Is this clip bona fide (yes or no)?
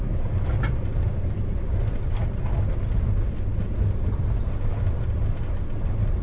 yes